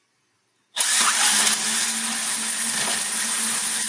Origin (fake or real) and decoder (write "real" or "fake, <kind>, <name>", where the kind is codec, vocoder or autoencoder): real